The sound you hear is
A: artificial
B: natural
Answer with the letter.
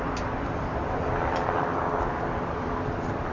B